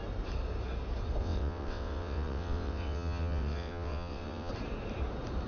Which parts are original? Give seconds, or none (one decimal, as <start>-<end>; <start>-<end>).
0.0-1.2; 4.5-5.5